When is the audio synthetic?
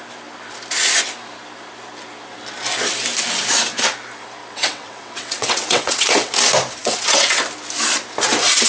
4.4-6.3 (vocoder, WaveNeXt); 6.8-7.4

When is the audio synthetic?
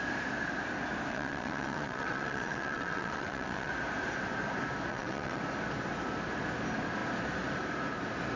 1.1-3.7 (vocoder, WaveNeXt); 4.9-5.4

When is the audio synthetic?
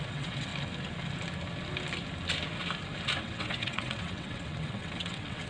0.0-0.5 (vocoder, WaveNeXt); 3.2-5.5